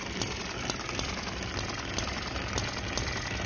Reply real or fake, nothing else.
real